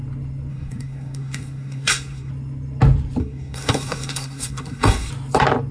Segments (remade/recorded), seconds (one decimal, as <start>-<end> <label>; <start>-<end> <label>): 0.0-0.5 recorded; 0.5-2.3 remade; 2.3-3.2 recorded; 3.2-5.1 remade; 5.1-5.7 recorded